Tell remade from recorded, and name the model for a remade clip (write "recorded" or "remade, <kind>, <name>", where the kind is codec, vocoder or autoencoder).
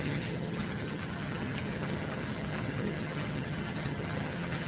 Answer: remade, vocoder, HiFi-GAN